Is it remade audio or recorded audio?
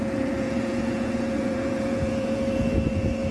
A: remade